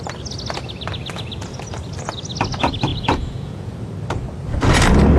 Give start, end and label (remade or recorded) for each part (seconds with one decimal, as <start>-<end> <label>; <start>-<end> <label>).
0.0-2.9 recorded; 2.9-3.8 remade; 3.8-5.2 recorded